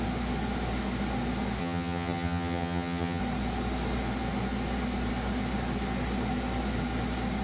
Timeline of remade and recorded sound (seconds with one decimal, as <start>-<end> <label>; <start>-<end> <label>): 0.0-1.6 recorded; 1.6-3.2 remade; 3.2-7.4 recorded